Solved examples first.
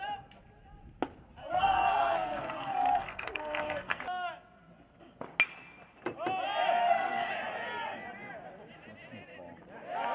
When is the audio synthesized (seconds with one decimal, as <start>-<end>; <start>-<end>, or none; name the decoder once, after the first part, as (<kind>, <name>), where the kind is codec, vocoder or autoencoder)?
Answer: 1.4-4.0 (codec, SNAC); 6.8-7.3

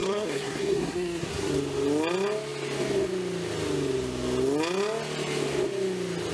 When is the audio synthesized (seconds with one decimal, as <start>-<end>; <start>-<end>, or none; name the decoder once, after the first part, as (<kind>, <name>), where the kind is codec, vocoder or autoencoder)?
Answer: 0.0-1.5 (codec, SNAC)

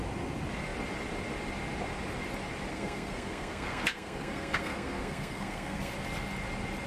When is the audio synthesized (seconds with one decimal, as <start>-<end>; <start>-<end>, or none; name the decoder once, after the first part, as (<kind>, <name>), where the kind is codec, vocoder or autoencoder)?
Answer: 2.7-5.9 (codec, SNAC)